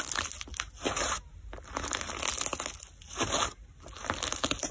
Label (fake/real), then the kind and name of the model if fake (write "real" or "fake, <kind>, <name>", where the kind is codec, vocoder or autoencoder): real